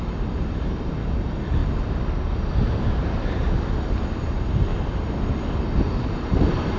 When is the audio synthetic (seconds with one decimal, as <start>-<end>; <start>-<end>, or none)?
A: 0.0-1.6; 2.9-3.4; 4.2-4.7; 5.8-6.8